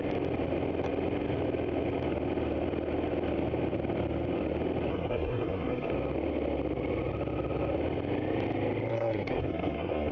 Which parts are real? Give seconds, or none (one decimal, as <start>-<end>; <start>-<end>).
0.0-4.9; 5.9-8.9